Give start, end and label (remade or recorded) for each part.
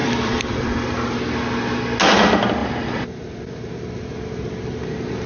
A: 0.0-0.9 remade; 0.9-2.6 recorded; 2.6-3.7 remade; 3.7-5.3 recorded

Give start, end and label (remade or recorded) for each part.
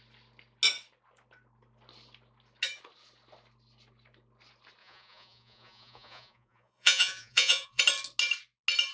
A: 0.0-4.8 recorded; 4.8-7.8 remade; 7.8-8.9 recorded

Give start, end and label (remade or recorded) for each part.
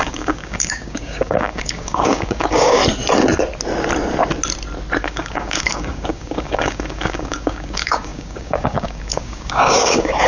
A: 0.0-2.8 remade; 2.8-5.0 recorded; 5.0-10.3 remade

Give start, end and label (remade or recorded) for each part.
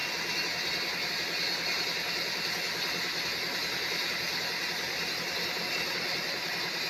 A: 0.0-6.9 recorded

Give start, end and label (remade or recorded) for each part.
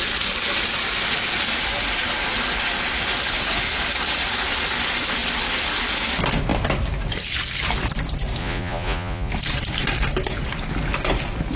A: 0.0-8.4 recorded; 8.4-9.3 remade; 9.3-11.6 recorded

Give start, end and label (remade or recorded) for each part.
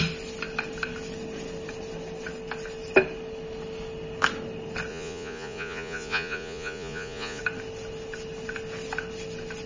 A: 0.0-4.9 recorded; 4.9-7.4 remade; 7.4-9.7 recorded